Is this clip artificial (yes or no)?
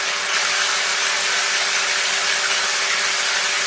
no